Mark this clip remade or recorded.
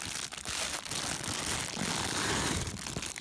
recorded